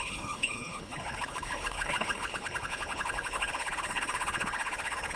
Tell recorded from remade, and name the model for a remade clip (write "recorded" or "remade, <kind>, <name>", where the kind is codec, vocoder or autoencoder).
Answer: remade, codec, HILCodec